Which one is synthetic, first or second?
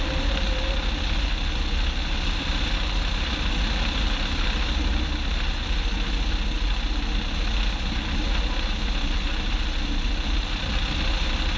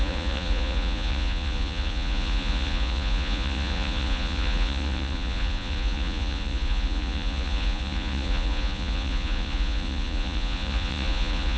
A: second